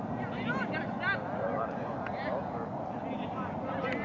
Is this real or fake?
real